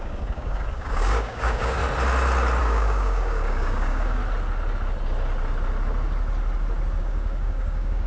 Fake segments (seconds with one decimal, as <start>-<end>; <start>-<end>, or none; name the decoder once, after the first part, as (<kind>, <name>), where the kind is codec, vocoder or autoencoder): 0.0-1.8 (codec, DAC); 2.6-4.2; 7.0-8.1